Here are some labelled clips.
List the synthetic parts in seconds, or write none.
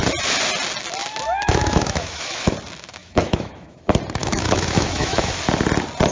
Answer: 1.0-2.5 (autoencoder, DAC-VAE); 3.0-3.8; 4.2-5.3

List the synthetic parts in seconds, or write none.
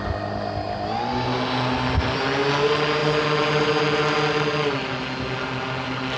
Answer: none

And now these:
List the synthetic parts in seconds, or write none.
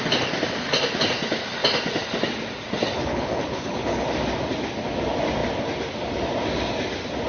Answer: 3.1-4.0 (codec, HILCodec)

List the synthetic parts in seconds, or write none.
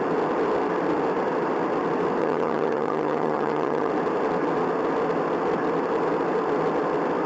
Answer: 2.2-3.9 (vocoder, HiFi-GAN)